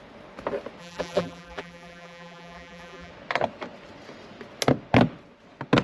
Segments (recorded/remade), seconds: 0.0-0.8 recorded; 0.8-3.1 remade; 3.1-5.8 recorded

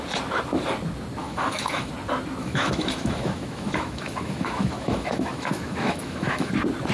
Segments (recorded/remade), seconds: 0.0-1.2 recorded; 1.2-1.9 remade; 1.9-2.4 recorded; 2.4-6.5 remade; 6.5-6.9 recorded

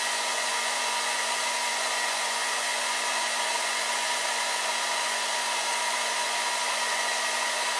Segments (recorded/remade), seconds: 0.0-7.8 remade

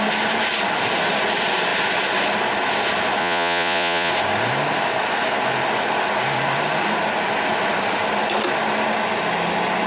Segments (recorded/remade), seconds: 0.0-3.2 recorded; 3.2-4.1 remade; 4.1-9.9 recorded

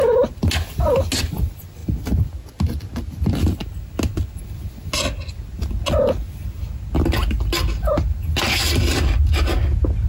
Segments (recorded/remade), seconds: 0.0-10.1 recorded